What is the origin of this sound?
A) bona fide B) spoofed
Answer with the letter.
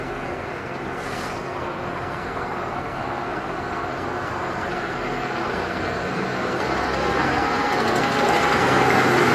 B